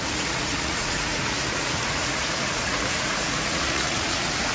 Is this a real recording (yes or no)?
no